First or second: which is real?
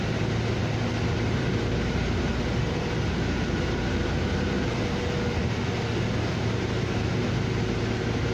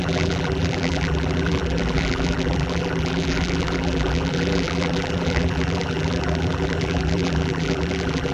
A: first